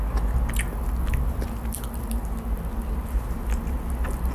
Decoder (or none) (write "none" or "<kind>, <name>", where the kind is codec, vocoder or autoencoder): none